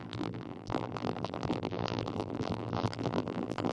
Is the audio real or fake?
fake